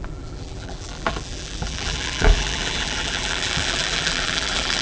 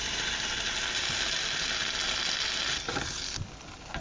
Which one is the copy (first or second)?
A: first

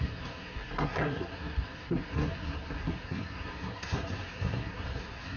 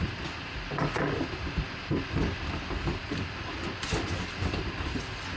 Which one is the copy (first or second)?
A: first